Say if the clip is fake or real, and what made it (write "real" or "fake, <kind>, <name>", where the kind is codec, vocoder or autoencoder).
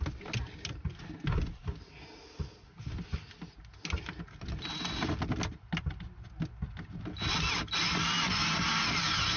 real